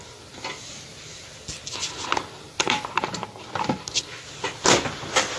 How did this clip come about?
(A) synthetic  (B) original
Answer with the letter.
B